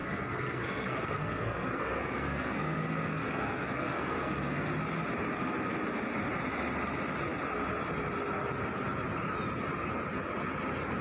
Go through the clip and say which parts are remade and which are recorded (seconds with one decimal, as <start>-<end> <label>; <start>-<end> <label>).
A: 0.0-4.7 remade; 4.7-11.0 recorded